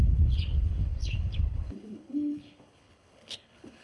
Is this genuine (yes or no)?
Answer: no